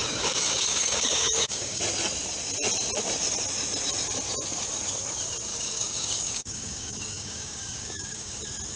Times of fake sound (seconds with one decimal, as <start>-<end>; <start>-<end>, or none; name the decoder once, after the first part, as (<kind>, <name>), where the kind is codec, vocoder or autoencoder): 0.0-1.8 (codec, DAC); 5.5-8.4